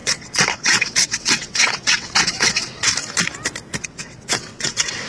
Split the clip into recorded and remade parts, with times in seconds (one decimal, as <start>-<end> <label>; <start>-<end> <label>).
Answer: 0.0-2.9 remade; 2.9-3.8 recorded; 3.8-5.1 remade